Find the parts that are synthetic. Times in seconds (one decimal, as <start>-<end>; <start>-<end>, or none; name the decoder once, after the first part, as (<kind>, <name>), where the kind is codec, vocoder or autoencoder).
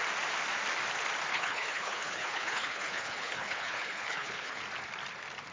1.3-4.6 (codec, HILCodec)